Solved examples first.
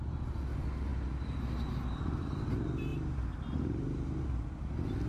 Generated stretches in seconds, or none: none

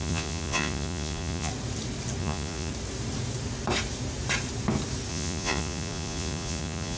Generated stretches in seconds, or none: 0.0-1.5; 2.2-2.7; 5.1-7.0

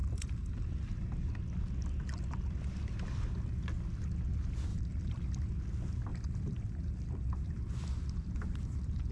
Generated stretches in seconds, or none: 0.0-0.7; 4.7-5.6; 6.1-9.1

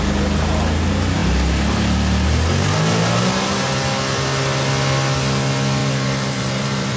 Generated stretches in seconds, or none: 5.8-7.0

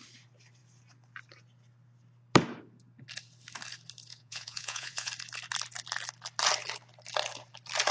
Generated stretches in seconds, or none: 4.1-5.1

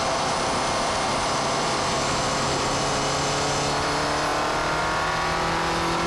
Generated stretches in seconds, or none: none